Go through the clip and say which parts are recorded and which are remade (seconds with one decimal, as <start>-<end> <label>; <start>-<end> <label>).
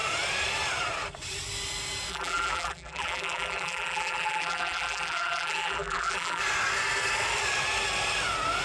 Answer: 0.0-2.1 recorded; 2.1-6.4 remade; 6.4-8.6 recorded